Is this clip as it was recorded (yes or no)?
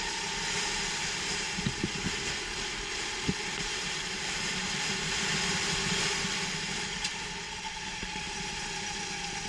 no